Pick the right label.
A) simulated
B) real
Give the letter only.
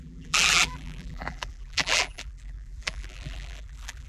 A